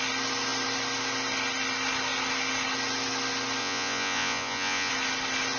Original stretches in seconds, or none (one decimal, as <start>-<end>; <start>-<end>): 0.0-3.6; 4.9-5.6